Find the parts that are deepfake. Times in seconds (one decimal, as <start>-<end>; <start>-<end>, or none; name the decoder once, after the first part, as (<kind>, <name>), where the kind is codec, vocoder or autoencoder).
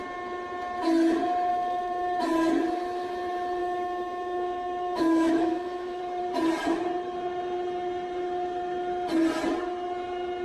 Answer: 1.5-2.2 (autoencoder, DAC-VAE); 3.6-6.0